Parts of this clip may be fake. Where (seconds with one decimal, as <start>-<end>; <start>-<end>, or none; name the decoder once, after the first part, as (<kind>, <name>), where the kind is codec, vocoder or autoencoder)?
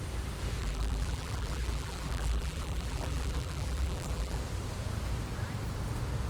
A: 0.6-4.4 (vocoder, BigVGAN v2)